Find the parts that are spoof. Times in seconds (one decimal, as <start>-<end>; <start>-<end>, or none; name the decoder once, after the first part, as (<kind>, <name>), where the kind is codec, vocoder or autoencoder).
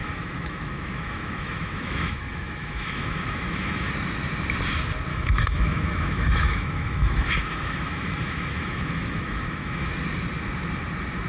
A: 0.0-3.9 (autoencoder, DAC-VAE); 5.1-9.9